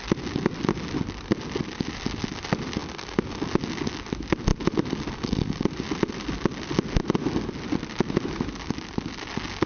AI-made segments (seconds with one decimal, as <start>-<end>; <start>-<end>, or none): none

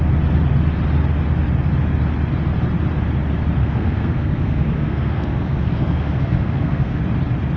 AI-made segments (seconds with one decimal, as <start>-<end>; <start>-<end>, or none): 3.6-7.0

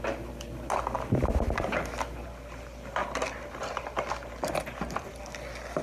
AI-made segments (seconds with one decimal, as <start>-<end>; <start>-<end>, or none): none

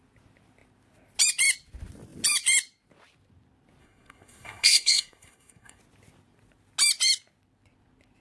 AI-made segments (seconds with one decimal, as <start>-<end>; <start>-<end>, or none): 3.8-5.8

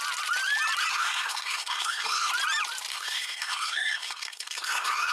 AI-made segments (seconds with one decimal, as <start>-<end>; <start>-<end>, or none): 0.9-2.3; 2.9-5.1

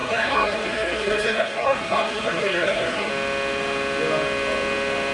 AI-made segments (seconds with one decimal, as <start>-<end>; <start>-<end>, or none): 0.0-3.1